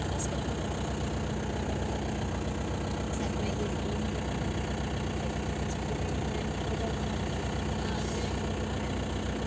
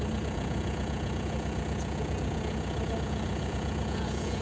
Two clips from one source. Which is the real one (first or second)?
first